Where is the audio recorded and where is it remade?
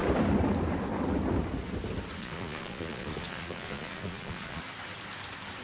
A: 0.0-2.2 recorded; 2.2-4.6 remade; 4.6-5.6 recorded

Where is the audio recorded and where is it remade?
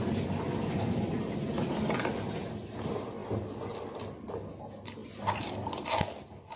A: 0.0-6.6 recorded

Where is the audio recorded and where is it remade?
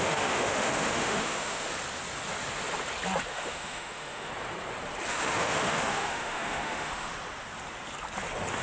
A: 0.0-1.7 remade; 1.7-3.3 recorded; 3.3-4.3 remade; 4.3-5.1 recorded; 5.1-7.1 remade; 7.1-8.6 recorded